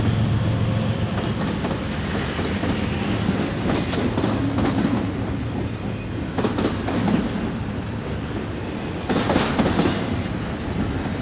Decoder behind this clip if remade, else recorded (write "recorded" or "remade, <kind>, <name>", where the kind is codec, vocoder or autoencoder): recorded